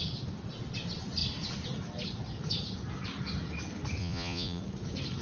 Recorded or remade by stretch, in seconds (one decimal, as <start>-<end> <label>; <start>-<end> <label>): 0.0-4.0 recorded; 4.0-4.6 remade; 4.6-5.2 recorded